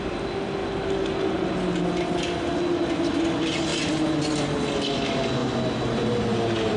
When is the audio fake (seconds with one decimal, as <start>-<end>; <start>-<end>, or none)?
none

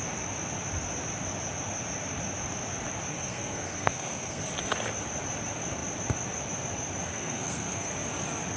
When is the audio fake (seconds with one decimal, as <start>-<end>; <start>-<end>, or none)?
3.1-4.4; 7.1-7.9